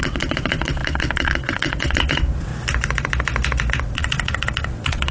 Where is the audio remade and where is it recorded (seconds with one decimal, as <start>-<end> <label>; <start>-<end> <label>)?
0.0-2.5 remade; 2.5-3.8 recorded; 3.8-5.1 remade